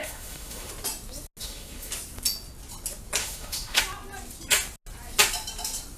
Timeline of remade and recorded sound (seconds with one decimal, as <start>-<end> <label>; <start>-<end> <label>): 0.0-0.7 remade; 0.7-1.4 recorded; 1.4-1.9 remade; 1.9-3.2 recorded; 3.2-3.8 remade; 3.8-6.0 recorded

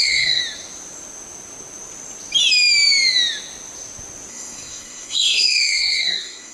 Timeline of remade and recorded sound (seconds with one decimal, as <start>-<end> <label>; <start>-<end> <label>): 0.0-0.4 remade; 0.4-4.3 recorded; 4.3-6.5 remade